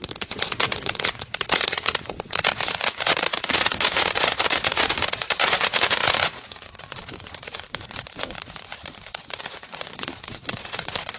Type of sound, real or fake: fake